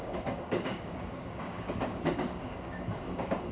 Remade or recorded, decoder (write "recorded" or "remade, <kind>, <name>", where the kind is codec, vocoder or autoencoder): remade, codec, DAC